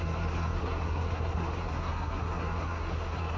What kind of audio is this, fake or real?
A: fake